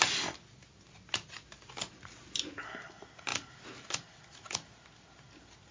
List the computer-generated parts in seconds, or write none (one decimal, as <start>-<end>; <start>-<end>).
none